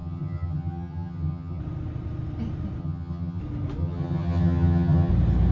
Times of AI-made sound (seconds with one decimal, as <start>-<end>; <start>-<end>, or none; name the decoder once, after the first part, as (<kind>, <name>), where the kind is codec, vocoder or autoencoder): 0.0-1.6 (vocoder, HiFi-GAN); 2.8-3.4; 3.8-5.1